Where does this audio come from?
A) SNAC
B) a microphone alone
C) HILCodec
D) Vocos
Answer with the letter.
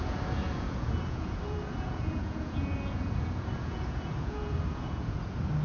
D